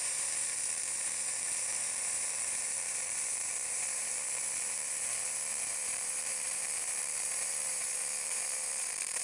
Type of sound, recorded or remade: remade